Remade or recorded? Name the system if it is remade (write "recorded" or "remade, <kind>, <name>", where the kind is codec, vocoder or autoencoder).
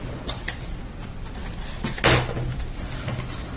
recorded